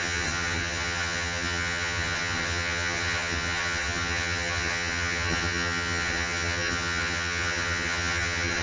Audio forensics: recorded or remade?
remade